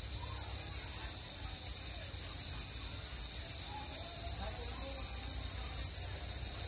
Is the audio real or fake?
real